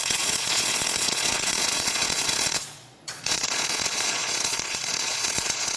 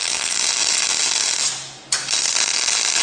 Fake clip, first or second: first